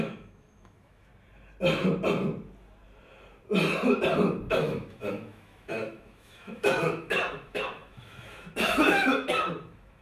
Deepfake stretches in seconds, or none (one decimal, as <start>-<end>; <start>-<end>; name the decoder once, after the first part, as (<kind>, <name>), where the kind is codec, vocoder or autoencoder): 0.0-1.1 (autoencoder, DAC-VAE); 4.5-10.0